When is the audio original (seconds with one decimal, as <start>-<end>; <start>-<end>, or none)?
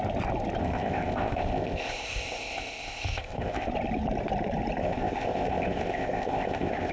0.0-0.6; 3.7-4.8